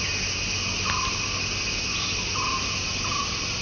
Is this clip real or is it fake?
real